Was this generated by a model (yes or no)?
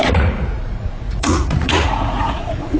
yes